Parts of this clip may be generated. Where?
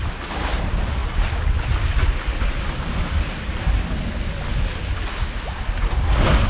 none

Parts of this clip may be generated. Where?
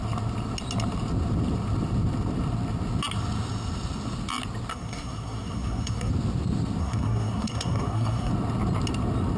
4.7-6.1; 6.8-8.3